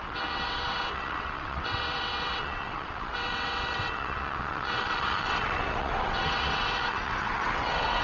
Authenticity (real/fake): fake